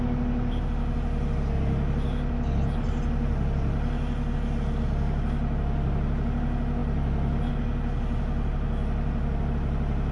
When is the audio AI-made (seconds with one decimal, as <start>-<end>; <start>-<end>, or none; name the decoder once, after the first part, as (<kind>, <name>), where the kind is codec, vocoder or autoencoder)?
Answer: none